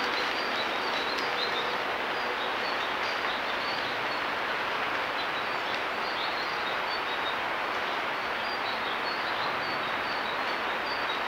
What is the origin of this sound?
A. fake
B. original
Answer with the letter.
B